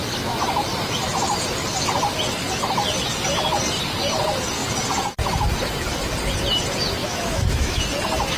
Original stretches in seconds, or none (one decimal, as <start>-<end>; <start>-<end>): 0.0-7.0; 7.8-8.4